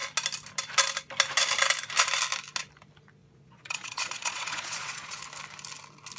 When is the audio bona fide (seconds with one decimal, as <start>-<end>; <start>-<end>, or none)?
0.0-3.2; 5.2-6.2